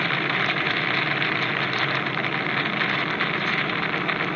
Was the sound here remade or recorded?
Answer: recorded